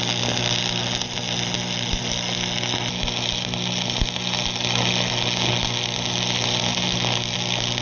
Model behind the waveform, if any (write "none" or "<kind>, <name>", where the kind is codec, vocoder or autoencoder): none